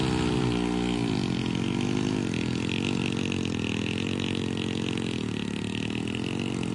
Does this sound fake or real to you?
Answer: real